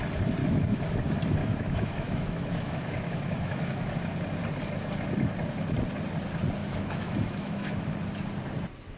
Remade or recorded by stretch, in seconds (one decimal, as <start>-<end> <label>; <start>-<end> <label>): 0.0-0.4 recorded; 0.4-0.9 remade; 0.9-1.4 recorded; 1.4-3.9 remade; 3.9-6.6 recorded; 6.6-7.8 remade; 7.8-9.0 recorded